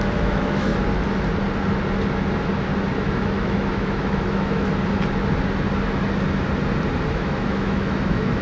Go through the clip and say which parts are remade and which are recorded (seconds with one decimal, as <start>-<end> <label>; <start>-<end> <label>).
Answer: 0.0-0.7 remade; 0.7-3.1 recorded; 3.1-4.7 remade; 4.7-7.1 recorded; 7.1-8.4 remade